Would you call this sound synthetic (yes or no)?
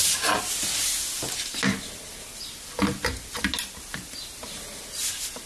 no